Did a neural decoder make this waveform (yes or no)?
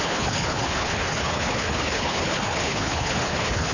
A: yes